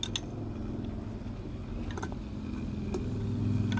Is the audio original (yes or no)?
yes